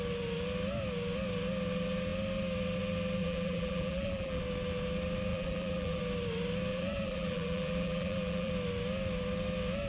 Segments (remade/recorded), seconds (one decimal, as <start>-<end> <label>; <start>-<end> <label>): 0.0-3.2 recorded; 3.2-4.4 remade; 4.4-5.3 recorded; 5.3-6.0 remade; 6.0-6.7 recorded; 6.7-8.5 remade; 8.5-9.9 recorded